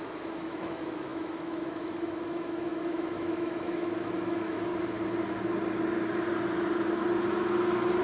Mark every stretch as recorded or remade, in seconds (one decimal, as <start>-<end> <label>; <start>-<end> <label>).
0.0-4.7 remade; 4.7-8.0 recorded